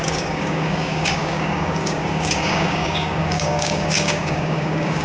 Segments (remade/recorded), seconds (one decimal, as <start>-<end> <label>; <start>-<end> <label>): 0.0-5.0 remade